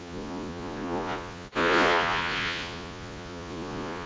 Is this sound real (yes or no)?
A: no